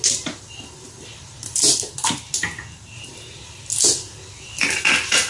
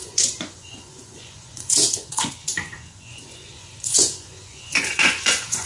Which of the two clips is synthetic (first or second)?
second